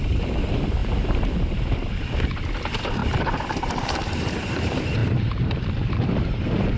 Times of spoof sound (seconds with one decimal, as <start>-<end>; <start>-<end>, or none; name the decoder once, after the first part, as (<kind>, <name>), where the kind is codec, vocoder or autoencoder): 0.8-1.4 (vocoder, BigVGAN v2); 3.0-4.3; 5.0-6.8